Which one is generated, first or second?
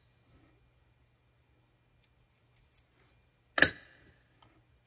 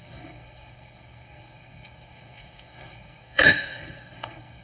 second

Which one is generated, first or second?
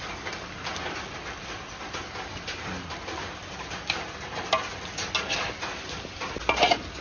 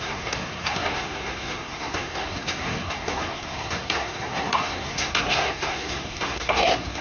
second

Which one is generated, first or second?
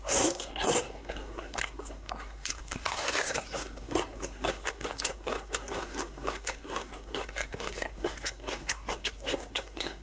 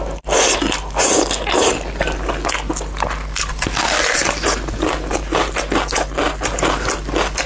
first